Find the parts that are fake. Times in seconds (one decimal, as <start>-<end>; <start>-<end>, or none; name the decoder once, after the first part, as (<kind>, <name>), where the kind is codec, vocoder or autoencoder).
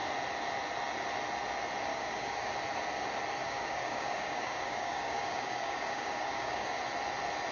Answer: 1.9-2.5 (codec, DAC); 3.4-6.8